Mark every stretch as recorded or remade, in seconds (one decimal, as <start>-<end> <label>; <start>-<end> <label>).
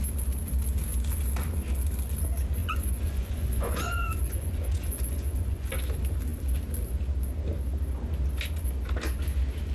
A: 0.0-2.6 recorded; 2.6-5.7 remade; 5.7-9.7 recorded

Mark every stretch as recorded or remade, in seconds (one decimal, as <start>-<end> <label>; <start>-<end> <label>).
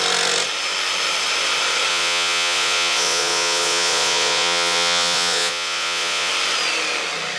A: 0.0-1.9 recorded; 1.9-6.3 remade; 6.3-7.4 recorded